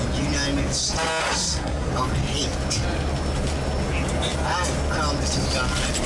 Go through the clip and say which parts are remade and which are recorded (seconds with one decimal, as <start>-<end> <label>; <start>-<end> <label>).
0.0-1.2 recorded; 1.2-1.9 remade; 1.9-6.1 recorded